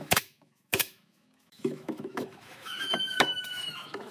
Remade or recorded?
remade